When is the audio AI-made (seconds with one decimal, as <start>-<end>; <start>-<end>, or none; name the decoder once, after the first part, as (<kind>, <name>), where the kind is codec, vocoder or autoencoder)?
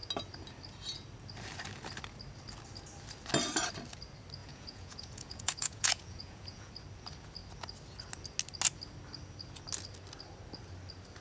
4.4-6.7 (vocoder, Vocos)